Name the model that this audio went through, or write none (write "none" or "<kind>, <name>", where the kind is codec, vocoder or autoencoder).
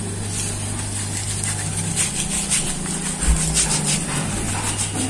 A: none